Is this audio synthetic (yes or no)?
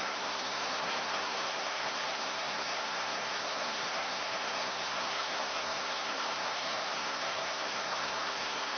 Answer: yes